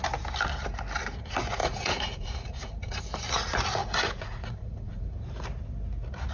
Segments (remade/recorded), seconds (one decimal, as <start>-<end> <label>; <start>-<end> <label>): 0.0-1.6 recorded; 1.6-3.0 remade; 3.0-3.8 recorded; 3.8-5.2 remade; 5.2-6.3 recorded